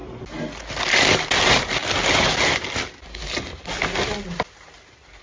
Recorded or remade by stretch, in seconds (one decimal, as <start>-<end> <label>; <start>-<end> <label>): 0.0-5.2 recorded